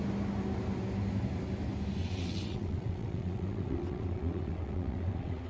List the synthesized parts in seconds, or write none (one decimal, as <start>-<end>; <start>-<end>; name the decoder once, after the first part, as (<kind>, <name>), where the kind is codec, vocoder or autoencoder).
2.0-5.5 (vocoder, WaveNeXt)